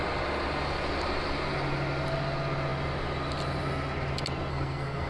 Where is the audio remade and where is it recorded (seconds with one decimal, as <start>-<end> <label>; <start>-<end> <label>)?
0.0-4.5 recorded; 4.5-5.1 remade